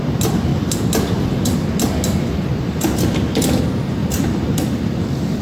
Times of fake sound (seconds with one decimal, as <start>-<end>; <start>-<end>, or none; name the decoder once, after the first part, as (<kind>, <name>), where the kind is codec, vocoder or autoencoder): 4.0-4.8 (vocoder, BigVGAN v2)